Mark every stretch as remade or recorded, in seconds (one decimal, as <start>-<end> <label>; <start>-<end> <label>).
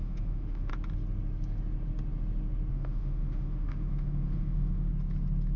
0.0-0.7 remade; 0.7-2.7 recorded; 2.7-4.9 remade; 4.9-5.6 recorded